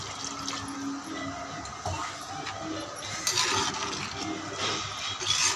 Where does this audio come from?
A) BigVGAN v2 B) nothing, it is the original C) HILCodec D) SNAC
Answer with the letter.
B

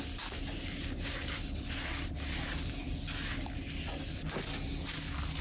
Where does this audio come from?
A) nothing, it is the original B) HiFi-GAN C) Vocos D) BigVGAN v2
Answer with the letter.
A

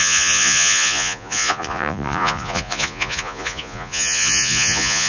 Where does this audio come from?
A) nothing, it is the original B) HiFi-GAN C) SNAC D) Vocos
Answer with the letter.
D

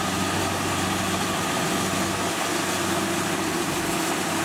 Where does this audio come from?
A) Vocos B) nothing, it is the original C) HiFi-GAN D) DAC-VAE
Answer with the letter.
B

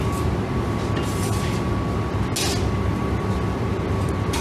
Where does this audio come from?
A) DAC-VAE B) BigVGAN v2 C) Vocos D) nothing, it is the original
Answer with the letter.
D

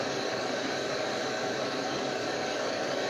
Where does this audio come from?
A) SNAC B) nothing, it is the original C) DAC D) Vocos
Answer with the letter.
C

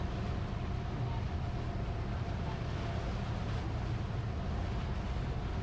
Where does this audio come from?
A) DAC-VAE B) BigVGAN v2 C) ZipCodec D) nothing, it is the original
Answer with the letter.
D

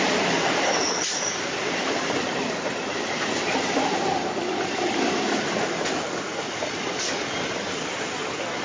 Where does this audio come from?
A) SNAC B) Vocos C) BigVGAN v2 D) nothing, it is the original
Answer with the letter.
C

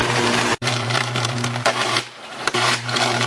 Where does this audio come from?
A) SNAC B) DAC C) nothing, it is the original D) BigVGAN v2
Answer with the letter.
D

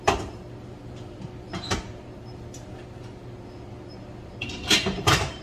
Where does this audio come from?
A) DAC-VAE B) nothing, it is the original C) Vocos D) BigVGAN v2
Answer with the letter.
D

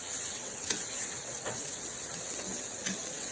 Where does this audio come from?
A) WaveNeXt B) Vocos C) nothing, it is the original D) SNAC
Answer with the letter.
A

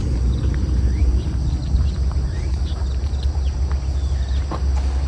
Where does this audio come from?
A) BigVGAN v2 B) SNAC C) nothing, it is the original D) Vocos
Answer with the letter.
C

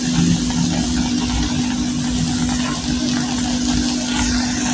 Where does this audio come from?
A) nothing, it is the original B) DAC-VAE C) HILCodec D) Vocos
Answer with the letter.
A